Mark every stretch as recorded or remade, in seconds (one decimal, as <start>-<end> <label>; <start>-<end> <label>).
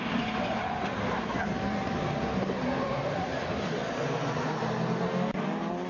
0.0-5.9 recorded